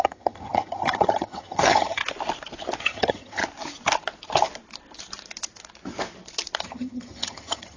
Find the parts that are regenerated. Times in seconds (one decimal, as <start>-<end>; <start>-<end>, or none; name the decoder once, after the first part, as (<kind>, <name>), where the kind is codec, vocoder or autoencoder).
0.0-2.0 (vocoder, HiFi-GAN); 2.8-3.4; 6.6-7.8